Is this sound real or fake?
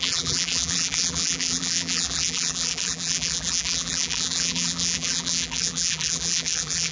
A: fake